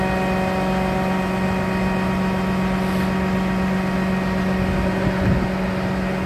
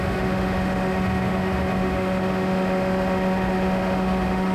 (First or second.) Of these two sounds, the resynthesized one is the second